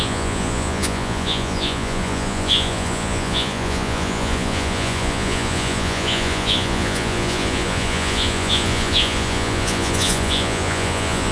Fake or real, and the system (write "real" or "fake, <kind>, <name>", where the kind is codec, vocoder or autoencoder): fake, vocoder, Vocos